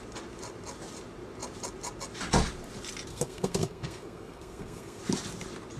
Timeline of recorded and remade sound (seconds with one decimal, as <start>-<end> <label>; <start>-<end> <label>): 0.0-3.1 recorded; 3.1-5.0 remade; 5.0-5.8 recorded